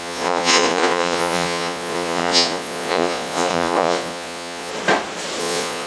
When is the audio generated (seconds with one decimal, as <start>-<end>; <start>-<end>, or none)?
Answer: 0.0-4.7; 5.4-5.9